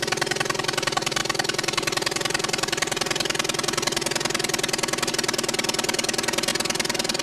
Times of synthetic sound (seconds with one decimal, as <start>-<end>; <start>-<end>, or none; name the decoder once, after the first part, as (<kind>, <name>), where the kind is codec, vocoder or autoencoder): none